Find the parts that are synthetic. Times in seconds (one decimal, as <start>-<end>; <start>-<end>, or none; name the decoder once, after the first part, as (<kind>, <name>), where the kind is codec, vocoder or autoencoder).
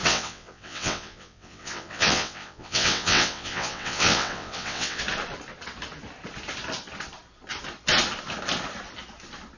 0.0-5.0 (vocoder, WaveNeXt)